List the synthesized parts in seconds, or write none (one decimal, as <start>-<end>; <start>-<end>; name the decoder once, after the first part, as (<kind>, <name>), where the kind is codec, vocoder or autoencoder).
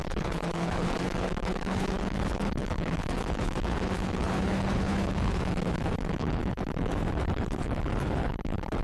0.0-8.8 (codec, HILCodec)